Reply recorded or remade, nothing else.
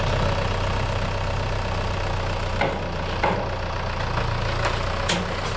recorded